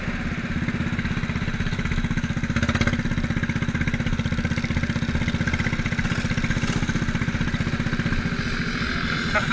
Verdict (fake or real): real